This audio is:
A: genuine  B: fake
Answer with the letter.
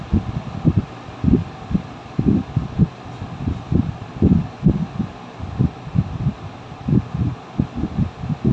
A